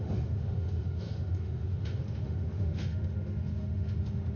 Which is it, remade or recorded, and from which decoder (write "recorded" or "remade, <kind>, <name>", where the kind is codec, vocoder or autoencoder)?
remade, autoencoder, DAC-VAE